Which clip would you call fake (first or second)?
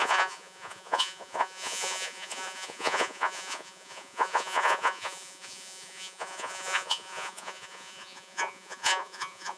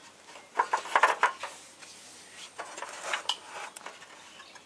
first